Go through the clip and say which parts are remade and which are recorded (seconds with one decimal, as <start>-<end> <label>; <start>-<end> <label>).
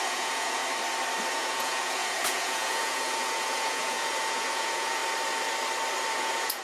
0.0-0.6 remade; 0.6-1.3 recorded; 1.3-5.0 remade; 5.0-6.1 recorded; 6.1-6.6 remade